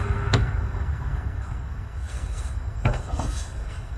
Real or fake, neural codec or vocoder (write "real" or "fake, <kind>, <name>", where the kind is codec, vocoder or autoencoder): fake, codec, SNAC